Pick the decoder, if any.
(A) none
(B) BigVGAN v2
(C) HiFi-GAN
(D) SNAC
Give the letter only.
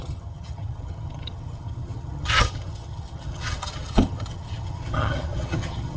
C